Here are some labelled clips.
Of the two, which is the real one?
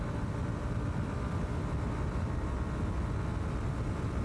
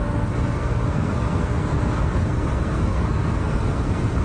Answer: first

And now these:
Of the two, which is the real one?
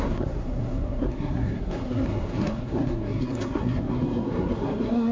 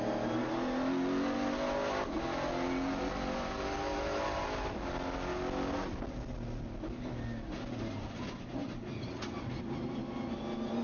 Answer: second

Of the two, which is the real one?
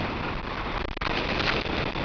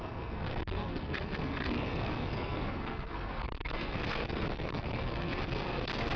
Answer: first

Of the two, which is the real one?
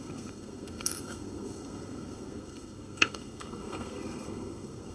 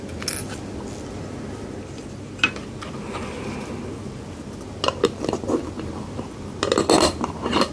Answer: second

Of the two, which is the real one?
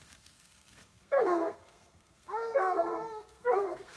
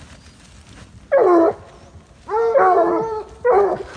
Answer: second